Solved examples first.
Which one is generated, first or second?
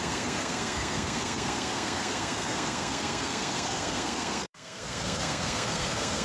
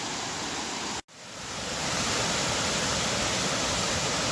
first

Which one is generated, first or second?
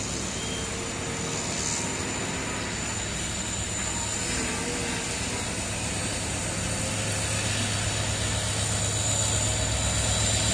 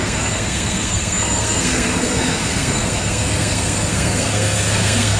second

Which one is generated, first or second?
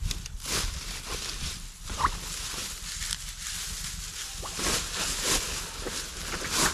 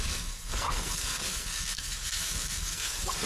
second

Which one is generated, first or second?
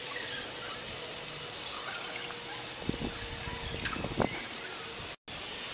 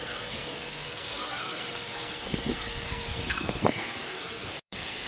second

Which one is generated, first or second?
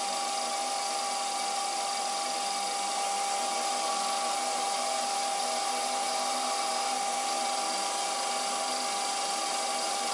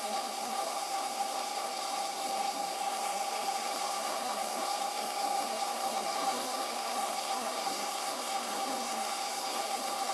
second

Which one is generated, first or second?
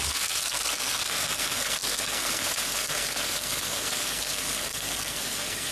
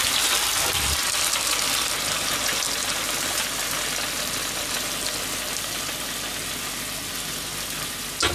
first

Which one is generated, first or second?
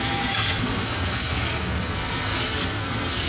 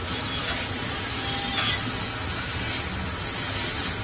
first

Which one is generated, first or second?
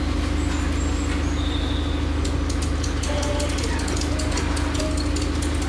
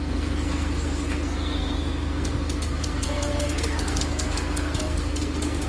second